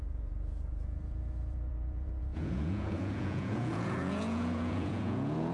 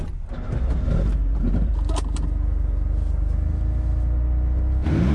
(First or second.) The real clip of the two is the second